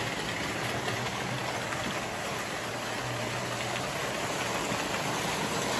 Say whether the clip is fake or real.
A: real